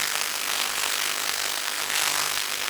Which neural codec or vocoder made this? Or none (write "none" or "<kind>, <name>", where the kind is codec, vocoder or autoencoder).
codec, SNAC